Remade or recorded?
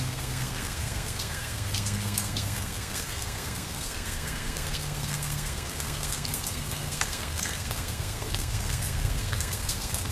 remade